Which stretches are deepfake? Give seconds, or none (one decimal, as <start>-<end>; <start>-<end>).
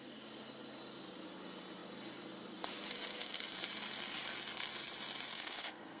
5.3-6.0